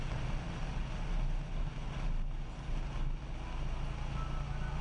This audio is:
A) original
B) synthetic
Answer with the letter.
A